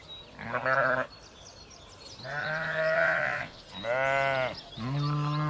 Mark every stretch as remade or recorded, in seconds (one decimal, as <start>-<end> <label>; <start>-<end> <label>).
0.0-2.4 recorded; 2.4-3.6 remade; 3.6-5.5 recorded